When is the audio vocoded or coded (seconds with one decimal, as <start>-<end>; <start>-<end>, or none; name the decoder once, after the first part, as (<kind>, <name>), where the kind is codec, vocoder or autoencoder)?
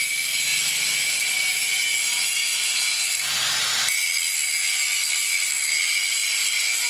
none